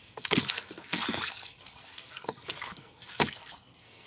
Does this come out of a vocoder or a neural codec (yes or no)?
yes